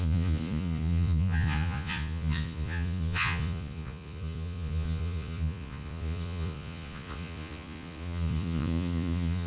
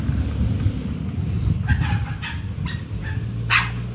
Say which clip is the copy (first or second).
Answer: first